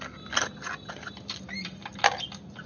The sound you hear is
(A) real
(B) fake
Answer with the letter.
A